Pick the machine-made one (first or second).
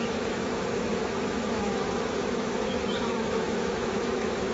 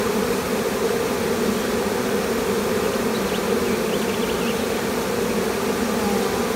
first